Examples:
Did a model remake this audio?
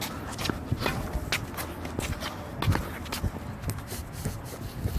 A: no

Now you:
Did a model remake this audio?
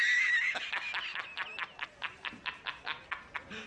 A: no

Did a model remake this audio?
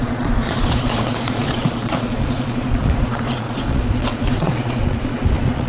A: yes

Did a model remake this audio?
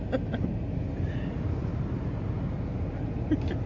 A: no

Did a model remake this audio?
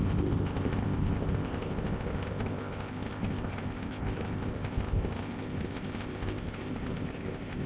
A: yes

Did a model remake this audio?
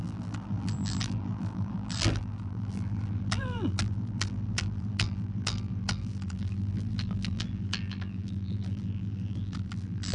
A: yes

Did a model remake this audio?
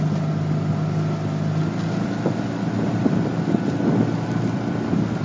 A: no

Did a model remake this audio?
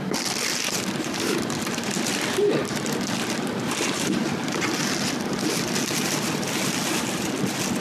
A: yes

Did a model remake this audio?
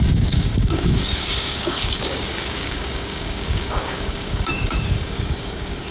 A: yes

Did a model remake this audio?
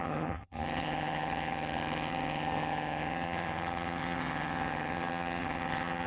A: yes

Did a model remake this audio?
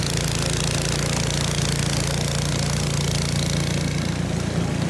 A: no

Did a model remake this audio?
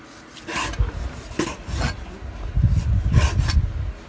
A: no